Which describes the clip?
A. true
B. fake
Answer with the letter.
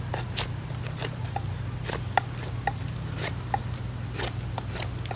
A